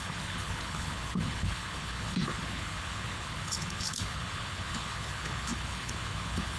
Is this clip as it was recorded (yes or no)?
no